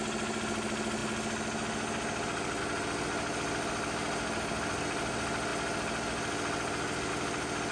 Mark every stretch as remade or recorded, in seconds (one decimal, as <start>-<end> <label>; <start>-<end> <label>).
0.0-7.7 recorded